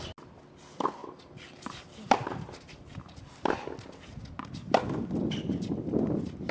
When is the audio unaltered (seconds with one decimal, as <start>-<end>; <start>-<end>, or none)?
0.0-1.0; 3.2-6.5